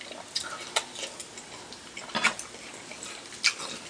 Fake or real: real